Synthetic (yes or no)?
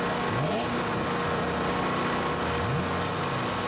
no